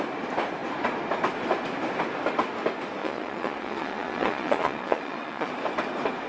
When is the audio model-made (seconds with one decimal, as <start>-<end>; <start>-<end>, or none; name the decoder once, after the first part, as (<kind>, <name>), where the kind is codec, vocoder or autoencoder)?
3.0-5.5 (vocoder, Vocos)